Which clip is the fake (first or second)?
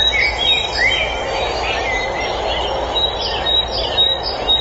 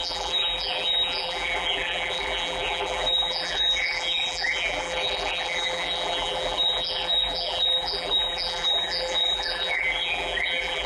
second